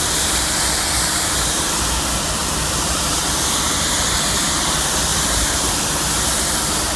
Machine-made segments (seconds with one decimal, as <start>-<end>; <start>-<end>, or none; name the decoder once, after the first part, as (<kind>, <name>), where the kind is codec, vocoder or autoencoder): 2.4-3.4 (vocoder, BigVGAN v2); 5.1-5.7